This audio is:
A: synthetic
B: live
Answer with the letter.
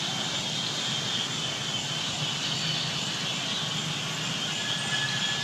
B